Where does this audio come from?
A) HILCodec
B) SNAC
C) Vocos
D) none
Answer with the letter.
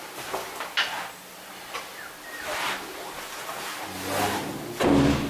D